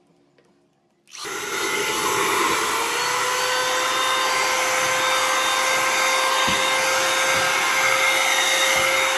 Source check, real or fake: real